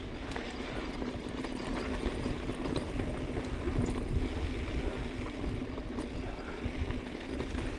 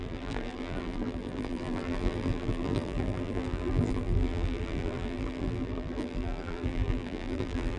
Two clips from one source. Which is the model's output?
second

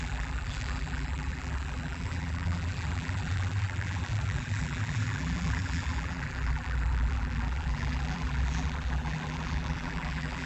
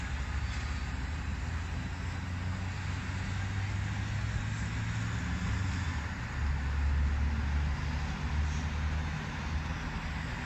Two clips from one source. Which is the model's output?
first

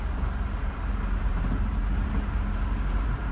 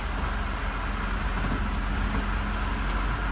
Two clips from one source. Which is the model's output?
first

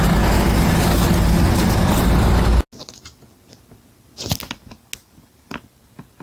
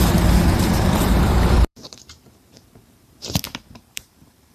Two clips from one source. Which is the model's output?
second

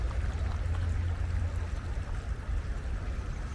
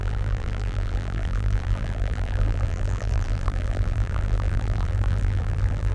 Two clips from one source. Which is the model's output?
second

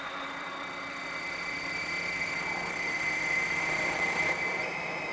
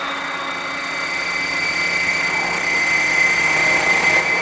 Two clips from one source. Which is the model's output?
first